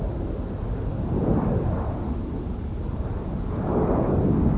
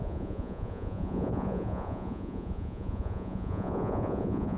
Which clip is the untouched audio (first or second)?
first